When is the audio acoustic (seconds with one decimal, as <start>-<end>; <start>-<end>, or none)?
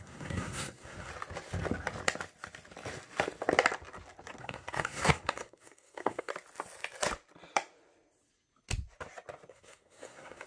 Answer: 1.1-4.4; 6.3-9.5